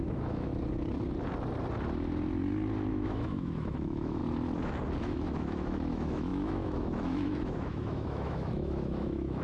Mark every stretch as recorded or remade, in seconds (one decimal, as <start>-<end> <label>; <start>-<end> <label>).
0.0-0.5 remade; 0.5-2.9 recorded; 2.9-4.2 remade; 4.2-5.0 recorded; 5.0-9.4 remade

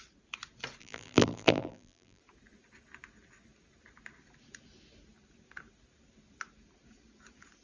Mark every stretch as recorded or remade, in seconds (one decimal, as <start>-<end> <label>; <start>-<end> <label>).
0.0-0.8 recorded; 0.8-2.2 remade; 2.2-7.6 recorded